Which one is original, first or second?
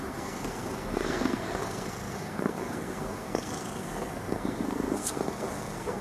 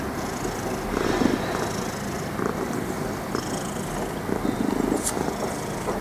second